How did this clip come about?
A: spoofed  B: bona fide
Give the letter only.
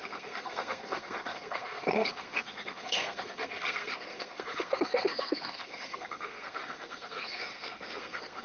A